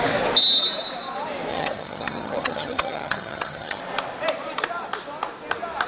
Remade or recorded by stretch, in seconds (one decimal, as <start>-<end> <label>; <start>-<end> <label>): 0.0-1.5 recorded; 1.5-3.8 remade; 3.8-5.9 recorded